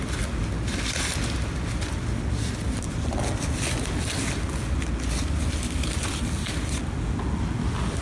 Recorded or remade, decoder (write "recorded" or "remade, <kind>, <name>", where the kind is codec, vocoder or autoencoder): recorded